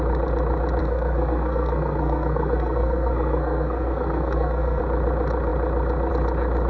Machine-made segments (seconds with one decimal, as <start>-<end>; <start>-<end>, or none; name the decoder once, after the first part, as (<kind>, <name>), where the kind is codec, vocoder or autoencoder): 0.8-4.8 (codec, SNAC)